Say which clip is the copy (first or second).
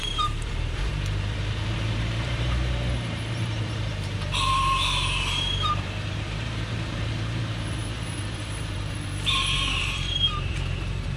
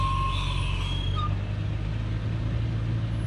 first